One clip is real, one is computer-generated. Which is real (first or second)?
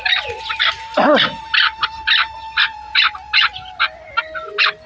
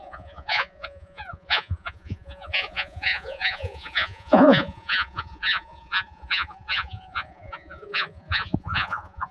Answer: first